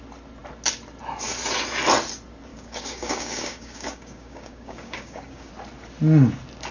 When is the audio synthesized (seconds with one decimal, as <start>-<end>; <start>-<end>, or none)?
2.5-5.5